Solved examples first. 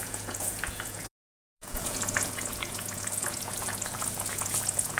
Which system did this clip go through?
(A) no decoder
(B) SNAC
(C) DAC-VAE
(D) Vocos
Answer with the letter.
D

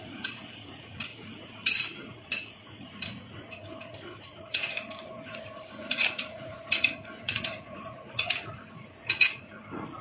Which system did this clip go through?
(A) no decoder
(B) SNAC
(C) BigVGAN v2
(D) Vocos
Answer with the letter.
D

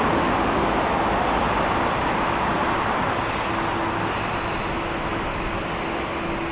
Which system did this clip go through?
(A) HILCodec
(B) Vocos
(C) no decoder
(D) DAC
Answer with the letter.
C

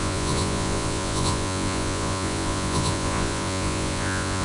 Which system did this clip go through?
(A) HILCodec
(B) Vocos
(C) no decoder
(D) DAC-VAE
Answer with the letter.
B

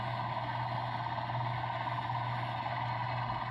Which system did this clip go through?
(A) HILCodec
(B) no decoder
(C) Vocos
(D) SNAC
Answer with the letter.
B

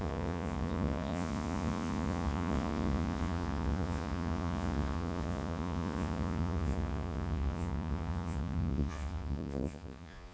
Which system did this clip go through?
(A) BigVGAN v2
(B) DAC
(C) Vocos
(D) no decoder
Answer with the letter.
C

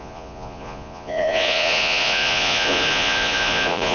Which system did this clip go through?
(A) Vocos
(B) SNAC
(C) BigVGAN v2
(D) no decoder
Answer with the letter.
A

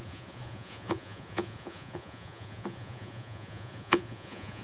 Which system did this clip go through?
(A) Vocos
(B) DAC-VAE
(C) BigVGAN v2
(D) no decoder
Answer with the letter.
A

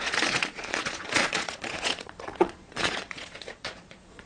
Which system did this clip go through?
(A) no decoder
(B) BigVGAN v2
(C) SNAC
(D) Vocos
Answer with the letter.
D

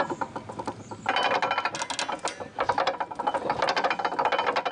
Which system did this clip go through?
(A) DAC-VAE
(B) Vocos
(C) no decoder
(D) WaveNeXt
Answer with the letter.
C